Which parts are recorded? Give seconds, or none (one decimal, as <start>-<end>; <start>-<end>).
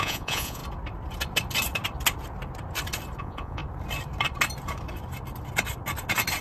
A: 0.6-3.2; 3.6-6.4